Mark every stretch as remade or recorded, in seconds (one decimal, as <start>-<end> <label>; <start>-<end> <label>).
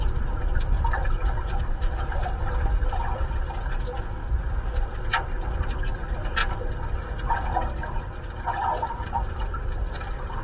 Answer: 0.0-1.0 remade; 1.0-1.6 recorded; 1.6-6.4 remade; 6.4-7.3 recorded; 7.3-7.8 remade; 7.8-8.6 recorded; 8.6-10.4 remade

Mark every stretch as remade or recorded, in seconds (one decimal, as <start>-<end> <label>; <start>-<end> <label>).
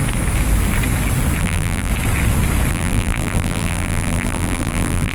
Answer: 0.0-1.4 recorded; 1.4-1.9 remade; 1.9-2.7 recorded; 2.7-5.1 remade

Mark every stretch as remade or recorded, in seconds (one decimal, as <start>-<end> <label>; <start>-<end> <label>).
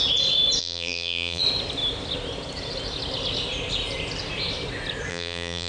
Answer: 0.0-0.6 recorded; 0.6-1.4 remade; 1.4-5.1 recorded; 5.1-5.7 remade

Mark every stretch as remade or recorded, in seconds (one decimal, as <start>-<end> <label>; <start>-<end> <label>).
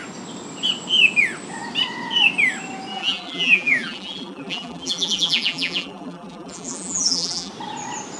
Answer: 0.0-2.9 recorded; 2.9-7.5 remade; 7.5-8.2 recorded